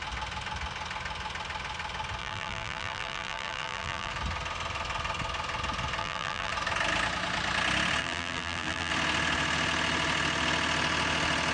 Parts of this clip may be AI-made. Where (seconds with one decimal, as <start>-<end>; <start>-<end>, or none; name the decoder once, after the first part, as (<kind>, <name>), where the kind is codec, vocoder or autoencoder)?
2.2-4.1 (vocoder, BigVGAN v2); 6.0-6.5; 8.0-8.9